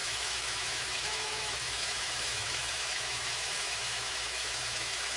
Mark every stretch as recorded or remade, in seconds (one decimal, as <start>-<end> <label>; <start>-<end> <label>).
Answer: 0.0-5.2 remade